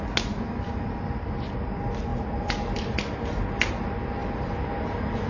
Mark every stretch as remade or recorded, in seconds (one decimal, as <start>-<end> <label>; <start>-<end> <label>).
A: 0.0-5.3 recorded